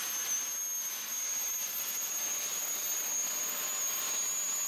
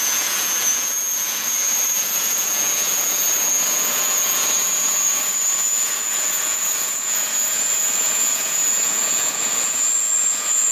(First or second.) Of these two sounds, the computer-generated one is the second